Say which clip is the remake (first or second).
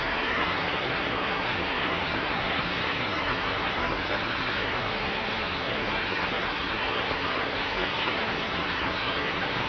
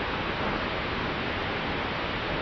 first